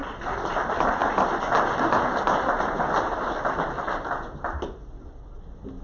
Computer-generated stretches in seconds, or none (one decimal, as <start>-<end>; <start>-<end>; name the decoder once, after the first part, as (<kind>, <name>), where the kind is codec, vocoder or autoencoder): none